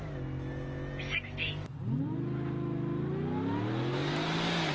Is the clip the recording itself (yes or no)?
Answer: yes